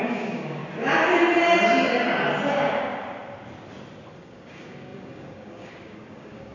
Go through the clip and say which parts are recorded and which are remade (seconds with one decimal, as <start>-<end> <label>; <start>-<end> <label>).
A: 0.0-0.6 remade; 0.6-4.1 recorded; 4.1-6.5 remade